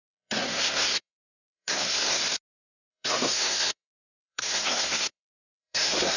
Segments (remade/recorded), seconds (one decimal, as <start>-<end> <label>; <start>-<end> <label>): 0.0-2.2 remade; 2.2-2.9 recorded; 2.9-6.2 remade